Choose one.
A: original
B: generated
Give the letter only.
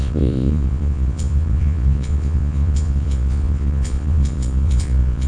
B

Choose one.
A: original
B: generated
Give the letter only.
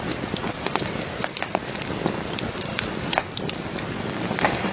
A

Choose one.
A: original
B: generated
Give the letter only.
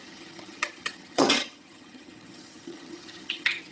B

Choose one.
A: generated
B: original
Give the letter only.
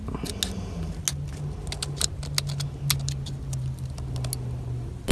B